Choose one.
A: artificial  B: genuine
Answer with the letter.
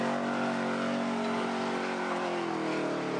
B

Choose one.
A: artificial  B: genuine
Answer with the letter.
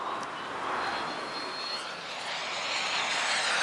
B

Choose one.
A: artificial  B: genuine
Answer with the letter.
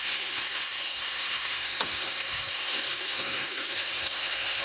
A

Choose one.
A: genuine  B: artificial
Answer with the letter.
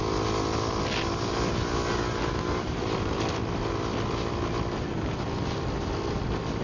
A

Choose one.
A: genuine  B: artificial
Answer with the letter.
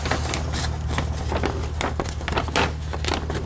A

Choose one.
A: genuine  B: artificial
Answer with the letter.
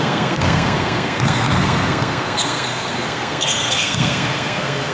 B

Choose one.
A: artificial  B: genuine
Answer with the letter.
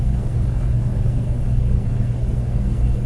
A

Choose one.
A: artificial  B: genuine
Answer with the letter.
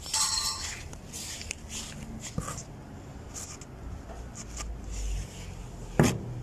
B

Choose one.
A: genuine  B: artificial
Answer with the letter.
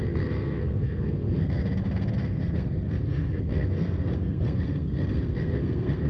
B